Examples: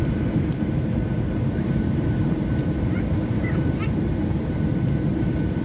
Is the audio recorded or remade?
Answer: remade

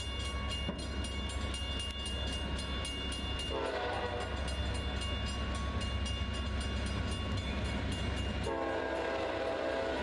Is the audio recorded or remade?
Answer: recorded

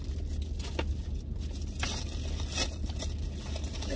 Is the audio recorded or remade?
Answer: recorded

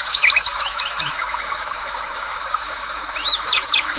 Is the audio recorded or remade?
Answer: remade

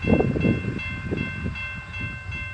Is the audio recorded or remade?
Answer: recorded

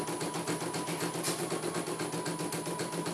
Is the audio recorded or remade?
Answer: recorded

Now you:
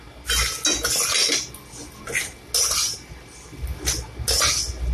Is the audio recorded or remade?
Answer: recorded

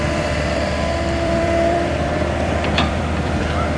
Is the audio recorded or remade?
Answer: remade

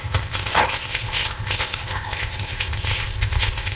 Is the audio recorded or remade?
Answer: remade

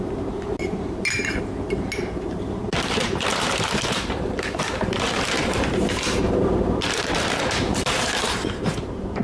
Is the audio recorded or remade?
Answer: remade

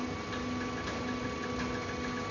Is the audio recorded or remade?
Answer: recorded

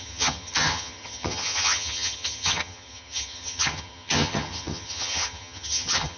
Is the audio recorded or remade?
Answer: remade